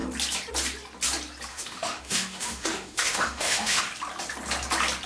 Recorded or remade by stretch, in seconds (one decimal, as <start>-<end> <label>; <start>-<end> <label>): 0.0-1.5 recorded; 1.5-3.8 remade; 3.8-5.1 recorded